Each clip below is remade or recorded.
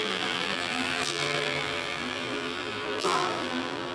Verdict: remade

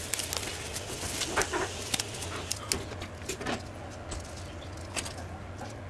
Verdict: recorded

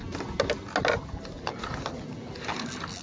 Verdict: recorded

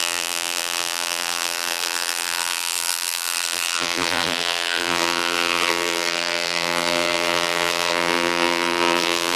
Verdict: remade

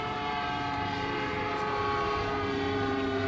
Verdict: remade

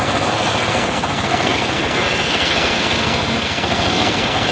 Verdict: remade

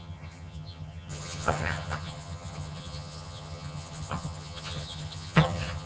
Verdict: remade